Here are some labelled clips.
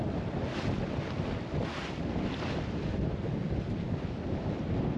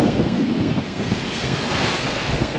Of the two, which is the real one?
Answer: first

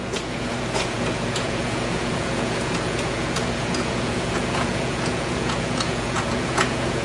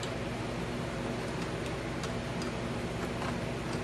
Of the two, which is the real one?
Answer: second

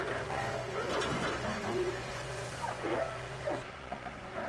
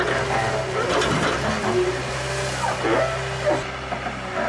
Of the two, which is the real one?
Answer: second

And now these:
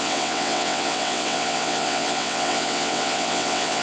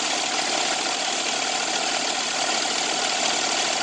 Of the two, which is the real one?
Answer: second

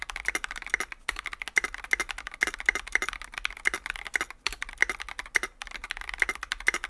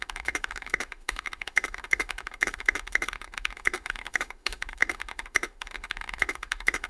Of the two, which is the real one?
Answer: first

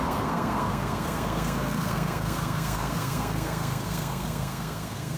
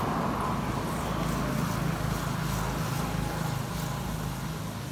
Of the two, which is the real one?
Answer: second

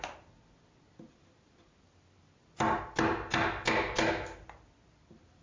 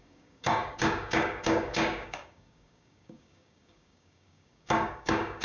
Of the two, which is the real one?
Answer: first